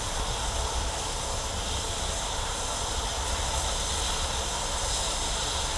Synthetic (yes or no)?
no